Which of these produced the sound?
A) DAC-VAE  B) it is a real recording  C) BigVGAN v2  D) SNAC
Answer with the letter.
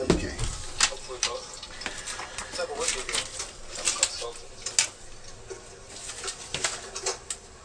B